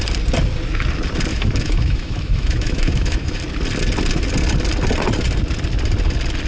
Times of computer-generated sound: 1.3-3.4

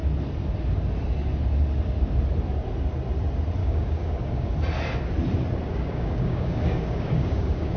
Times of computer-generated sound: 3.6-4.5; 5.7-7.8

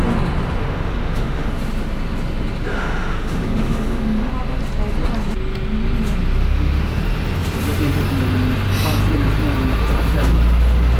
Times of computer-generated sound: 0.6-1.5; 2.7-4.3; 6.4-7.0